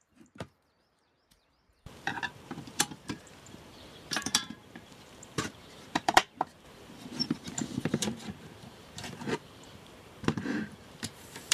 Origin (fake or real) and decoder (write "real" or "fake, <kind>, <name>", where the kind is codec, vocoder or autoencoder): fake, vocoder, BigVGAN v2